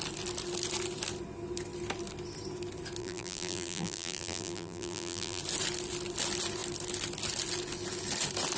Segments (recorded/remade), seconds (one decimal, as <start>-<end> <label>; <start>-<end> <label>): 0.0-3.0 recorded; 3.0-5.4 remade; 5.4-8.6 recorded